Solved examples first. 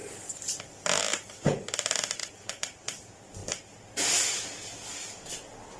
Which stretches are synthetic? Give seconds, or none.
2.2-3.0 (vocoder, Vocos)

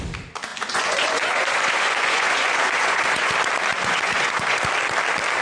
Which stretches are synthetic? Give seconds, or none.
0.5-3.3 (vocoder, Vocos); 3.7-4.6

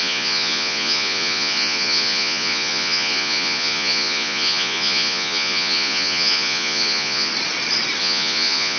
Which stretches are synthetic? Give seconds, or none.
0.0-7.3 (vocoder, Vocos); 8.0-8.8

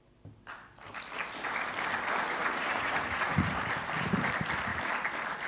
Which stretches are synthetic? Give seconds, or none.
2.4-3.5 (vocoder, Vocos)

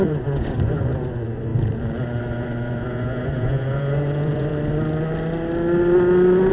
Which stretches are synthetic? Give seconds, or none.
0.0-1.5 (vocoder, Vocos); 2.2-4.5

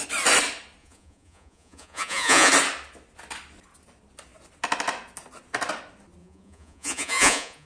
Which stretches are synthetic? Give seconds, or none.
0.8-2.5 (vocoder, Vocos); 6.2-7.7